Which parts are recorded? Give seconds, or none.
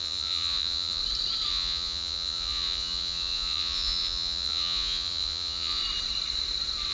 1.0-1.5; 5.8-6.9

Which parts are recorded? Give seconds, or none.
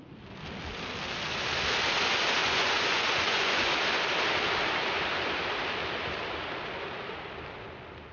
0.0-2.4; 3.7-8.1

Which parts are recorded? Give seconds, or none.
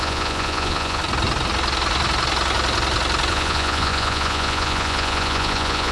1.0-3.3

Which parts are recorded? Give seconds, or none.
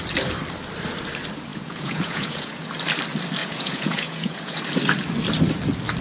0.0-1.5; 2.5-3.4; 4.6-6.0